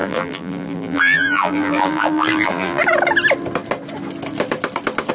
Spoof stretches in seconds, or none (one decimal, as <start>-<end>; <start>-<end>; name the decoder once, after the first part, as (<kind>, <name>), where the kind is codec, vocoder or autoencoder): 0.0-2.8 (vocoder, BigVGAN v2)